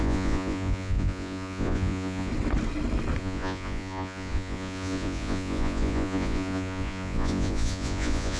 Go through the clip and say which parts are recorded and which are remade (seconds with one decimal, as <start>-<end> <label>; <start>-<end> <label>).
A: 0.0-2.3 remade; 2.3-3.2 recorded; 3.2-8.4 remade